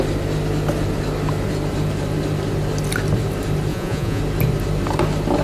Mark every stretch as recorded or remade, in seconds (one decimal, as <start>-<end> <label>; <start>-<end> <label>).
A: 0.0-3.7 recorded; 3.7-4.2 remade; 4.2-5.4 recorded

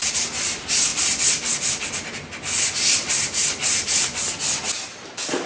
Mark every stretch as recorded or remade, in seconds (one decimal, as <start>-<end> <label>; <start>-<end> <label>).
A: 0.0-5.5 recorded

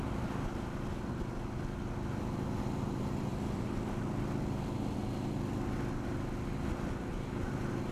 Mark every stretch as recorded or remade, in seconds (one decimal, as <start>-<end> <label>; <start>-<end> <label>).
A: 0.0-7.9 recorded

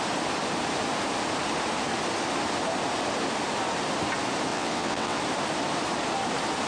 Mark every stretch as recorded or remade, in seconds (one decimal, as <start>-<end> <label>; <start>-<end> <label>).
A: 0.0-4.5 recorded; 4.5-5.2 remade; 5.2-6.7 recorded

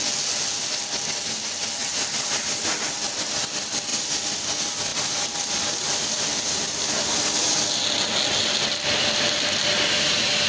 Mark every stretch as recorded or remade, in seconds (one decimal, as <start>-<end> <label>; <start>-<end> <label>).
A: 0.0-4.9 recorded; 4.9-6.8 remade; 6.8-10.5 recorded